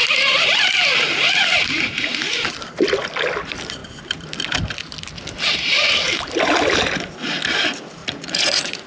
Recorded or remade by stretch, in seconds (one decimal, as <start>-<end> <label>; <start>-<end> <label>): 0.0-8.0 recorded; 8.0-8.9 remade